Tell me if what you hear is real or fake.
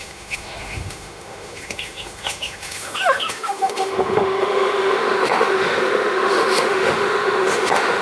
fake